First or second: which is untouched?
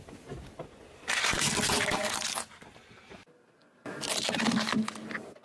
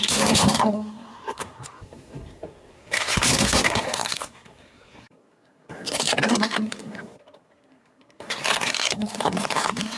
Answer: first